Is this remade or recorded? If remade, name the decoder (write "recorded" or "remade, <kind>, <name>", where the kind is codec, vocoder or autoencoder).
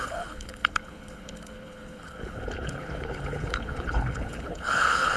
remade, codec, HILCodec